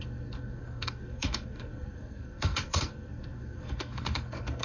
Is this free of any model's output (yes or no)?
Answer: no